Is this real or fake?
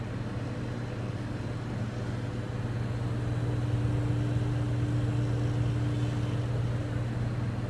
real